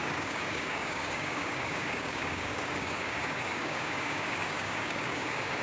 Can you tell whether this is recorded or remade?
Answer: remade